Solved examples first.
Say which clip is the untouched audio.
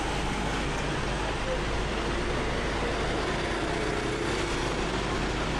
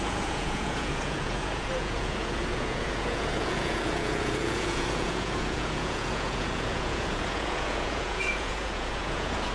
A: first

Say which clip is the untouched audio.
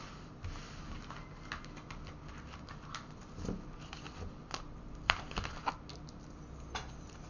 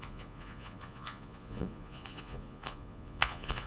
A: first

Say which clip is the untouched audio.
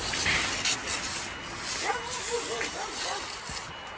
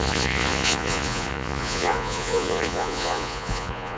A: first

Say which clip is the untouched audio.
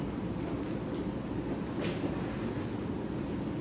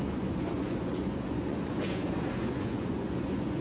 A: first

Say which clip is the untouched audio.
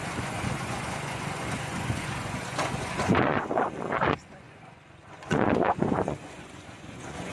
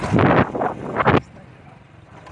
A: second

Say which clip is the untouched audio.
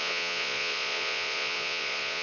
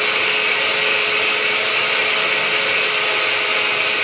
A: second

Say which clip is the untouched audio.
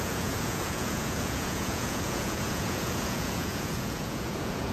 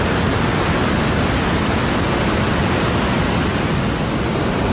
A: second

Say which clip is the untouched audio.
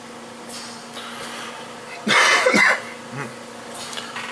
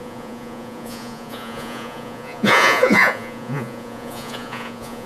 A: first